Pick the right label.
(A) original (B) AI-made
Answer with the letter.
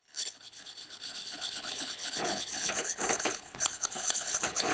B